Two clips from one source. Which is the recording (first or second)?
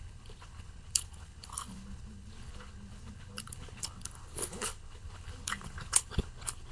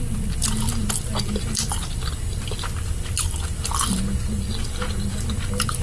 second